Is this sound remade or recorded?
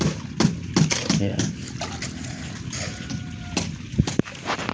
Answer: recorded